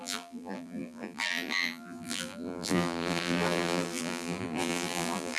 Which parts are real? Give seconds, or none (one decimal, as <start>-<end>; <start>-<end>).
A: none